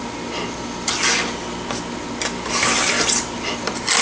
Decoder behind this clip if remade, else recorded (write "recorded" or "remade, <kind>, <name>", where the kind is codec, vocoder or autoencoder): recorded